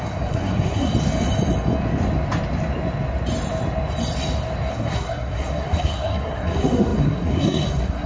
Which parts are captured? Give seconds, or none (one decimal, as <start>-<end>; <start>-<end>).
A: 0.9-4.7